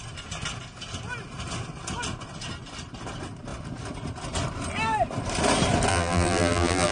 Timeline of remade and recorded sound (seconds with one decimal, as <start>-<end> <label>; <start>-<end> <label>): 0.0-5.9 recorded; 5.9-6.9 remade